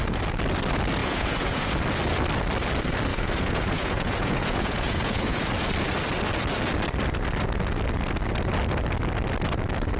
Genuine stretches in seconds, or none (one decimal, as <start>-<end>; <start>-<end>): 0.0-1.0; 1.7-3.1; 5.5-10.0